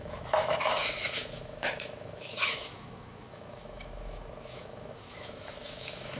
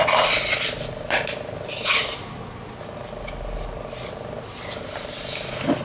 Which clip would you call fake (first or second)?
first